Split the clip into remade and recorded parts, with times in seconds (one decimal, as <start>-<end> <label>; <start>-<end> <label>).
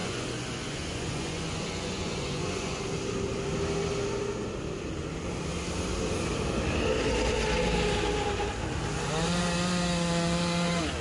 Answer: 0.0-2.8 remade; 2.8-11.0 recorded